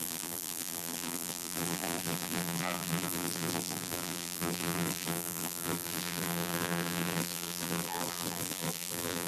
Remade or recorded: remade